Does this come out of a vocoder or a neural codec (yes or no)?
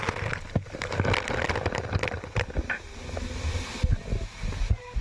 no